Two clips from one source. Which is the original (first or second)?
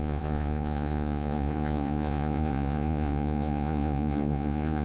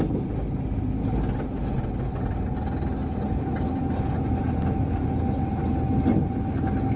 second